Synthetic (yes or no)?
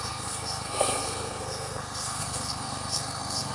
yes